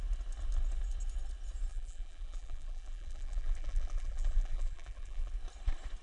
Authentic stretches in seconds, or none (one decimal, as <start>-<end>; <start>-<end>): 0.0-1.7; 5.3-6.0